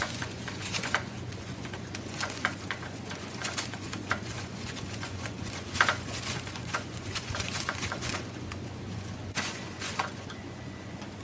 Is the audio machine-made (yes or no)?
yes